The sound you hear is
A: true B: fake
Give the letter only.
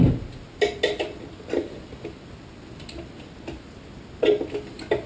A